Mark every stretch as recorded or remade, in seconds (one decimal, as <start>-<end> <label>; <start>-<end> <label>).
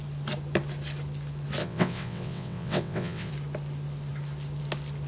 0.0-1.6 recorded; 1.6-3.3 remade; 3.3-5.1 recorded